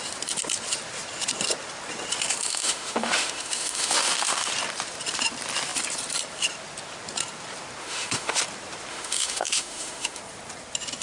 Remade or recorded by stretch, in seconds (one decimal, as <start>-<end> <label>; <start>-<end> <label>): 0.0-2.4 recorded; 2.4-4.5 remade; 4.5-7.8 recorded; 7.8-8.4 remade; 8.4-8.9 recorded; 8.9-10.2 remade; 10.2-11.0 recorded